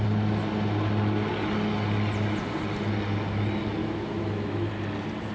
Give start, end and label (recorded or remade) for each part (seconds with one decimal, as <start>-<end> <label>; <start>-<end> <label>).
0.0-3.8 recorded; 3.8-4.7 remade; 4.7-5.3 recorded